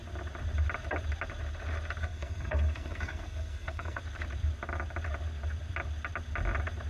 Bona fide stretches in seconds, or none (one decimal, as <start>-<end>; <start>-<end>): 0.0-2.0; 4.0-6.9